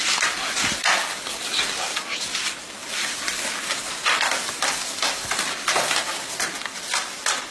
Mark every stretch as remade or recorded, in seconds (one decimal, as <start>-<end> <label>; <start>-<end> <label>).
0.0-7.5 recorded